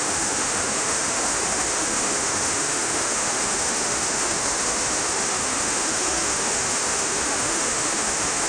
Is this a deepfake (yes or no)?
yes